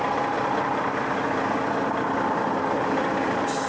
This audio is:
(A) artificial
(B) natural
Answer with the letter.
B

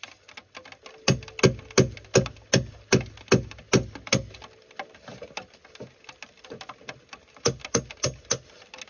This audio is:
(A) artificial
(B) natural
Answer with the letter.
B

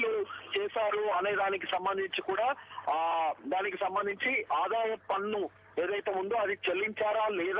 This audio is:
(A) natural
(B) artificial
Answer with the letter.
A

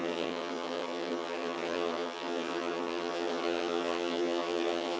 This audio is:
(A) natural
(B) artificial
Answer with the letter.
B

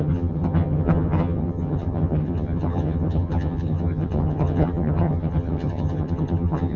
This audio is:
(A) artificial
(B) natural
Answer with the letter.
A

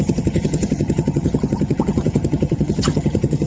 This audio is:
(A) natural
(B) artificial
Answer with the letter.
B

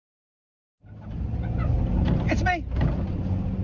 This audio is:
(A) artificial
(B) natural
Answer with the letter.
B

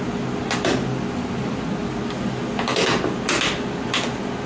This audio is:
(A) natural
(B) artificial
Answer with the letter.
A